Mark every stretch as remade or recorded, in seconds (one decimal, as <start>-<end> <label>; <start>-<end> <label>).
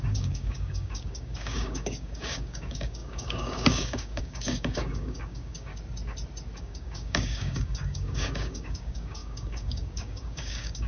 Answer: 0.0-5.7 remade; 5.7-6.6 recorded; 6.6-10.9 remade